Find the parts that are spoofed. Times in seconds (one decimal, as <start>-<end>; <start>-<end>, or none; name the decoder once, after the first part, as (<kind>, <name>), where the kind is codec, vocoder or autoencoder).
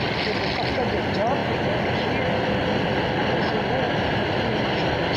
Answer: none